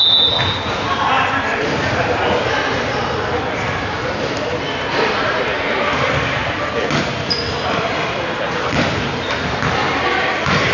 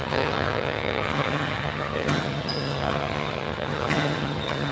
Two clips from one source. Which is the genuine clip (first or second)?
first